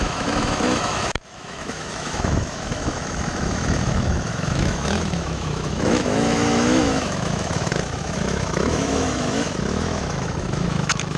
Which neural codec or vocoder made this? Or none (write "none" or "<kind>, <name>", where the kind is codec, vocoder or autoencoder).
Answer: autoencoder, DAC-VAE